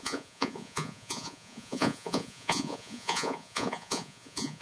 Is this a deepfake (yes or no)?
yes